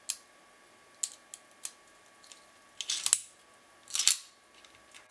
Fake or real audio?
real